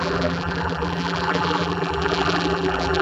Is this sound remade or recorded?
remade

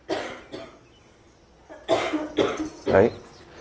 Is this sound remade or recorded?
recorded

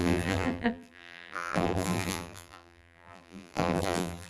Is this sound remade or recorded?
remade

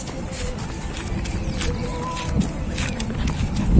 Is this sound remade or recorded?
remade